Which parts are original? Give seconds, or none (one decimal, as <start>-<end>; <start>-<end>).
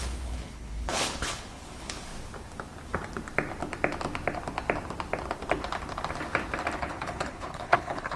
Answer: 2.1-6.8